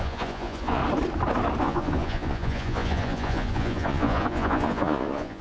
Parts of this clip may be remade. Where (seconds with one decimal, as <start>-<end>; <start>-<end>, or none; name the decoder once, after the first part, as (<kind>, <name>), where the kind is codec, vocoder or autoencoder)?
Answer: 0.0-0.8 (vocoder, Vocos); 1.6-5.4